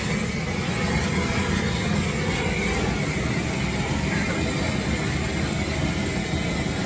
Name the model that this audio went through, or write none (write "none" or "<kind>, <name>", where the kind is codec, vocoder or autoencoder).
none